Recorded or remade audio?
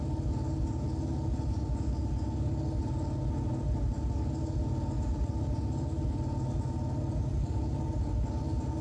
recorded